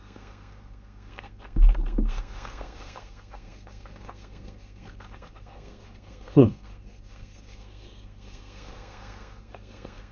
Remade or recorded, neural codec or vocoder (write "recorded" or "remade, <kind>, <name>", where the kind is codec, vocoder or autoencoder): remade, codec, SNAC